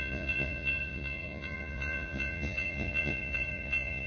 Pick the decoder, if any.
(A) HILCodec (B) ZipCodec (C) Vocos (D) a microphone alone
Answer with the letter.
C